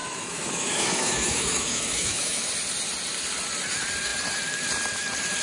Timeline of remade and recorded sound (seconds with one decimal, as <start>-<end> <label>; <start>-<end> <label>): 0.0-2.5 remade; 2.5-5.4 recorded